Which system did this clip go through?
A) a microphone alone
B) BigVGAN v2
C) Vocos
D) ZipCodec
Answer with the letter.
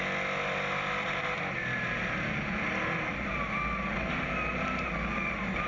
A